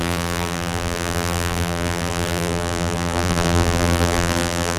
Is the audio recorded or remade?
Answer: remade